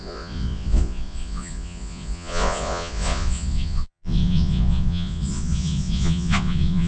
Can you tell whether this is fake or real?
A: fake